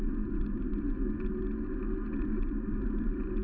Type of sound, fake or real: real